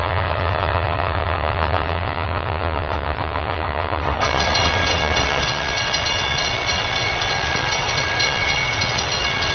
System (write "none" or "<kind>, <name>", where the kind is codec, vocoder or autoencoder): vocoder, WaveNeXt